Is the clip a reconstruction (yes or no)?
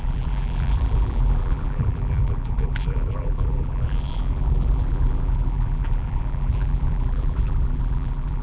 yes